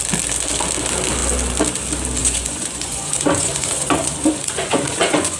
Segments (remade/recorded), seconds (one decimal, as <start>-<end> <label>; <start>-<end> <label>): 0.0-2.2 recorded; 2.2-5.4 remade